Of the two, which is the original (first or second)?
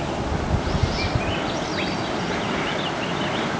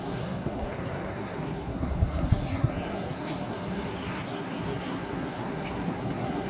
first